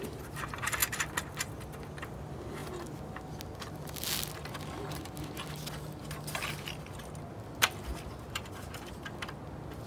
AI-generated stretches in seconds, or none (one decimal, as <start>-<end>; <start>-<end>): none